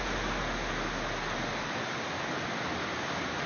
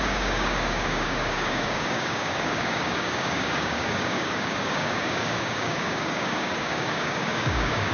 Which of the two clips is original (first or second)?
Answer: first